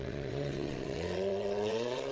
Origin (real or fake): fake